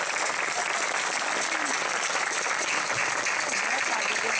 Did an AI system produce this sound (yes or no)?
no